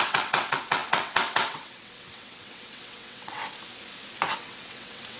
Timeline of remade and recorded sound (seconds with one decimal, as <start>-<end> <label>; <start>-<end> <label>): 0.0-3.4 remade; 3.4-4.3 recorded; 4.3-5.2 remade